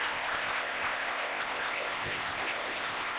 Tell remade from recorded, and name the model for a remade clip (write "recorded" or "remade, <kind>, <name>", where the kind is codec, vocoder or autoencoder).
remade, codec, ZipCodec